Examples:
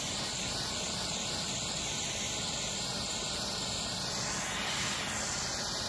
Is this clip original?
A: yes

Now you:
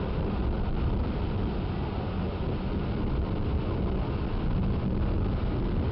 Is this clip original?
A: yes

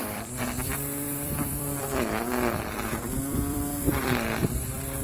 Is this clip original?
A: no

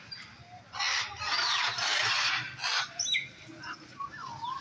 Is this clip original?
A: yes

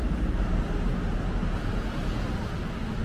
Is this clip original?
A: yes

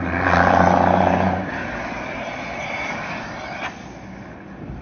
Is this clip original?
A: yes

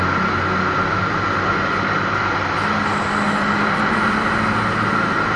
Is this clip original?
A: yes